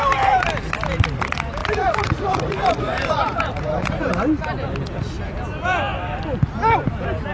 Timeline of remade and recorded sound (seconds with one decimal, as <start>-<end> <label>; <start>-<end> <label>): 0.0-1.6 recorded; 1.6-4.1 remade; 4.1-7.3 recorded